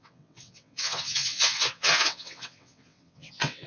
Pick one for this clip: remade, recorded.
remade